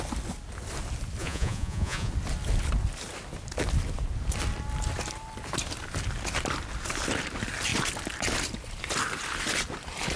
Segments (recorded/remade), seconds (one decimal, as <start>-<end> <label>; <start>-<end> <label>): 0.0-1.2 recorded; 1.2-2.1 remade; 2.1-10.2 recorded